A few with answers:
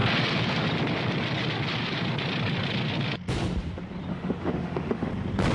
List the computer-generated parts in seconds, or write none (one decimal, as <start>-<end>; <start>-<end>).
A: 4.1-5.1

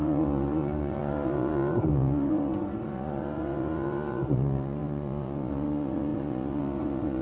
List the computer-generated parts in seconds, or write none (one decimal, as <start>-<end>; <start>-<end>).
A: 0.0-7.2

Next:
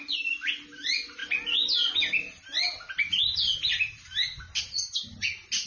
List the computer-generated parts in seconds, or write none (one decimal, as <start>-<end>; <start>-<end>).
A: none